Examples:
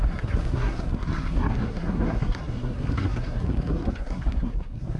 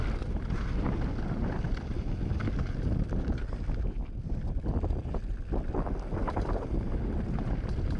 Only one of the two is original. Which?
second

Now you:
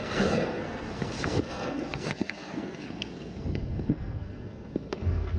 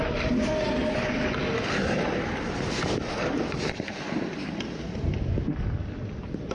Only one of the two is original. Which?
second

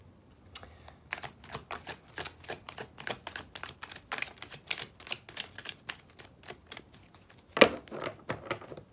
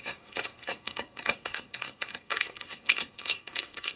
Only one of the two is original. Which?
first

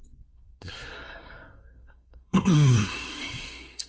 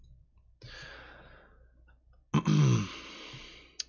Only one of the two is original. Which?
second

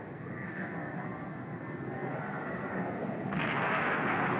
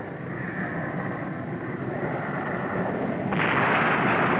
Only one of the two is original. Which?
second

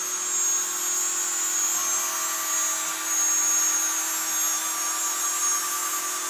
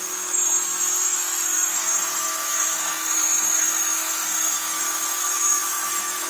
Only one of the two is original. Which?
first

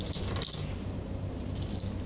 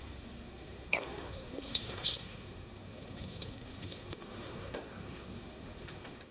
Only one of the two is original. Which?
first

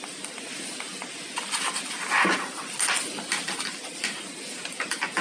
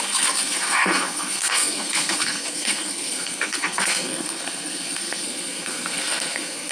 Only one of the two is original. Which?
first